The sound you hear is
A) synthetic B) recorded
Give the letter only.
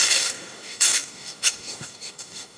A